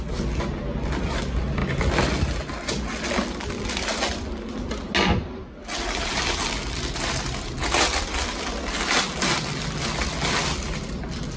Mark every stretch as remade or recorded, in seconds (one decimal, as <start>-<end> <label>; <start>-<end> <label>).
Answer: 0.0-11.4 recorded